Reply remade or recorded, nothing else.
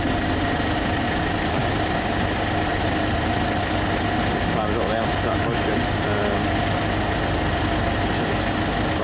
recorded